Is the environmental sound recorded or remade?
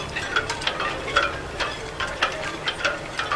remade